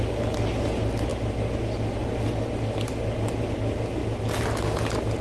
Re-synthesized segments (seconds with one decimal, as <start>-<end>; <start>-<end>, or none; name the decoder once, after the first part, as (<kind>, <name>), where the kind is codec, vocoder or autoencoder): none